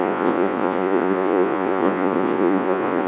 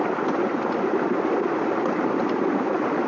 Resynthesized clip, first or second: first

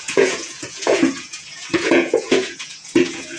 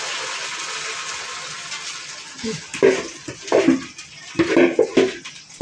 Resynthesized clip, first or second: first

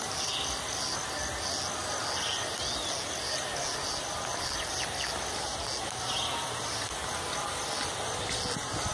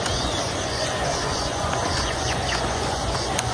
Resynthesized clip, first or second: second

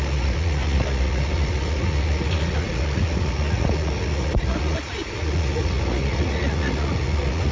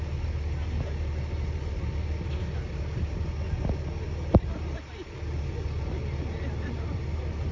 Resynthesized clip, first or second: first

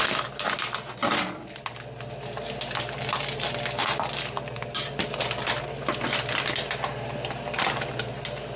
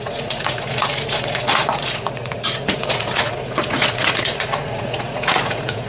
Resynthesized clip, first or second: second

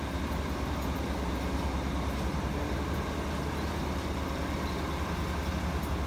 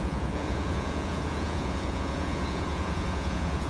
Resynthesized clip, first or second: second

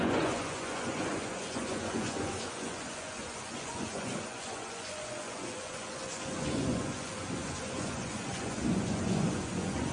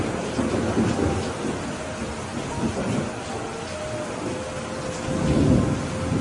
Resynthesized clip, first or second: first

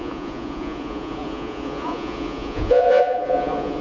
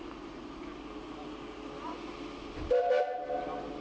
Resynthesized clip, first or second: first